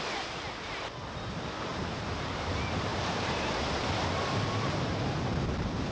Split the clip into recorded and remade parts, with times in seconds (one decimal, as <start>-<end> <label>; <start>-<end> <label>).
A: 0.0-1.7 recorded; 1.7-2.5 remade; 2.5-2.9 recorded; 2.9-3.6 remade; 3.6-5.9 recorded